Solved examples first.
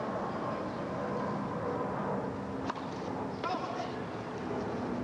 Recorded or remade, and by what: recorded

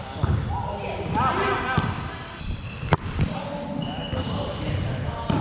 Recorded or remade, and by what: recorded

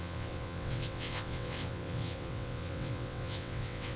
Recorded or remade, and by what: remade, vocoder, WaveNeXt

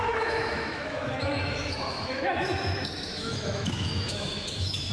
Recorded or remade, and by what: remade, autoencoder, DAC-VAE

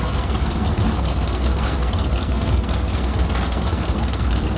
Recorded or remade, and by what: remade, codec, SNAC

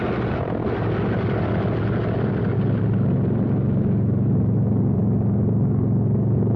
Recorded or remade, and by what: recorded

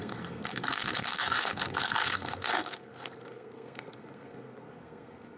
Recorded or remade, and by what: remade, codec, SNAC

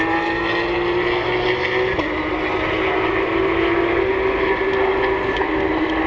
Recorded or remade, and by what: recorded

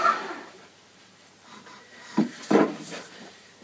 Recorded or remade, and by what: remade, vocoder, BigVGAN v2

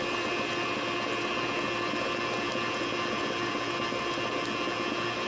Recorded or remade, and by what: recorded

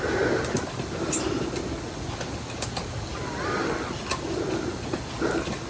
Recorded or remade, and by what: recorded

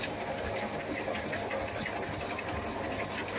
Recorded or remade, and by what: recorded